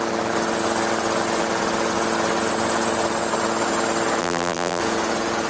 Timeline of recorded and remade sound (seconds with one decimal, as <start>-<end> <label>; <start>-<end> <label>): 0.0-4.2 recorded; 4.2-4.8 remade; 4.8-5.5 recorded

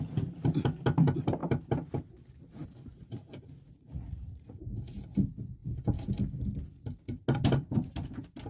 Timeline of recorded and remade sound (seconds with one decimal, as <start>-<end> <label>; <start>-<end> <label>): 0.0-2.9 recorded; 2.9-4.6 remade; 4.6-8.5 recorded

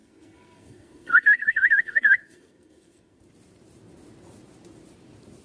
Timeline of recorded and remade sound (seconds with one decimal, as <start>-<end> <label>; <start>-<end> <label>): 0.0-3.2 remade; 3.2-5.4 recorded

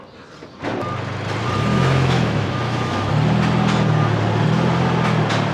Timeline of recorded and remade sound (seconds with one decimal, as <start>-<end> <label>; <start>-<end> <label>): 0.0-1.7 recorded; 1.7-3.1 remade; 3.1-5.5 recorded

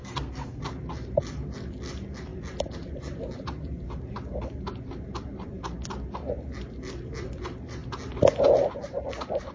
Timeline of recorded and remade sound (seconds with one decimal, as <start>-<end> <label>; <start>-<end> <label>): 0.0-0.6 remade; 0.6-9.5 recorded